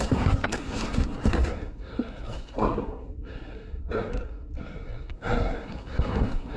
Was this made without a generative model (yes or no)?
no